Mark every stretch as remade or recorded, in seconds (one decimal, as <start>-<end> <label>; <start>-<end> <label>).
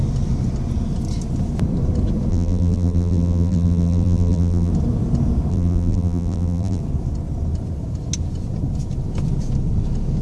0.0-2.3 recorded; 2.3-4.7 remade; 4.7-5.5 recorded; 5.5-6.8 remade; 6.8-10.2 recorded